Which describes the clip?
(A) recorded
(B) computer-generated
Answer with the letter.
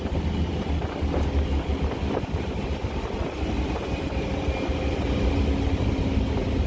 A